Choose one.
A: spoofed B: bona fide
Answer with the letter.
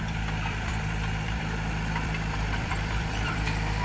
A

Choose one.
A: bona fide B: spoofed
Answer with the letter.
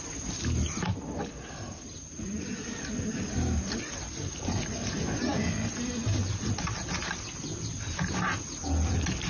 A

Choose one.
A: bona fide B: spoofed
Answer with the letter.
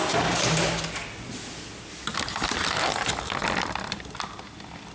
A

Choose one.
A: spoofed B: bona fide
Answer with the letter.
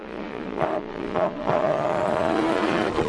A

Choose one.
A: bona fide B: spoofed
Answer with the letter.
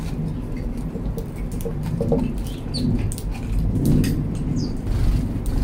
A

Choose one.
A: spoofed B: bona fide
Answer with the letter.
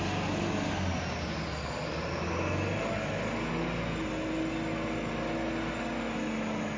B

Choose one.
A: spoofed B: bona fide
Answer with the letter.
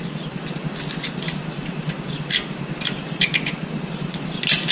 B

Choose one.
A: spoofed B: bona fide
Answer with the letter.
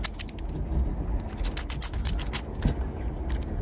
B